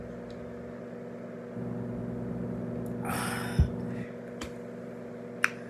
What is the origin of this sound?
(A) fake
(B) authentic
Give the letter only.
B